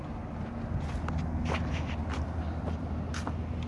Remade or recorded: recorded